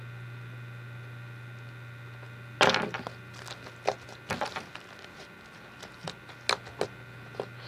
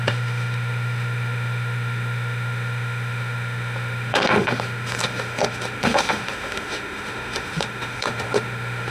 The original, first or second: first